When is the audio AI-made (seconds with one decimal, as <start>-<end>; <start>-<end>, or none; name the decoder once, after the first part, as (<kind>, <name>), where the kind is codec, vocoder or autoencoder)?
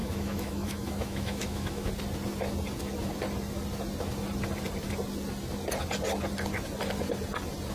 0.0-1.9 (autoencoder, DAC-VAE)